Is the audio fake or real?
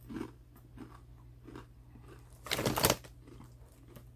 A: real